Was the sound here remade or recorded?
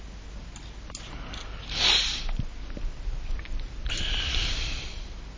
recorded